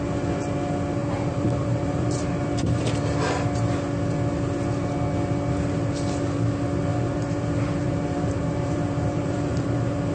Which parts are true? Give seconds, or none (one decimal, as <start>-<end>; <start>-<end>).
0.0-1.0; 2.8-6.9